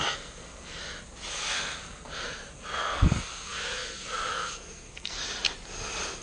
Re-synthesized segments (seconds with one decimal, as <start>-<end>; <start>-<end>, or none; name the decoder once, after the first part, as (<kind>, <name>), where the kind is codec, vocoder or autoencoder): 0.0-0.8 (codec, SNAC); 1.3-5.2